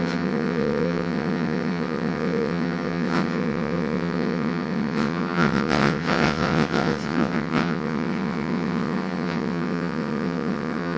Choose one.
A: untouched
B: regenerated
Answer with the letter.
B